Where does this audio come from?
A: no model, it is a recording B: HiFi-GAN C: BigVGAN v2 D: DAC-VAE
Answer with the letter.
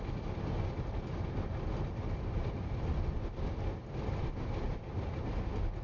A